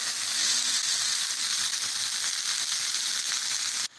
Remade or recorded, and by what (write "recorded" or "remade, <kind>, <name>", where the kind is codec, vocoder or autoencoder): recorded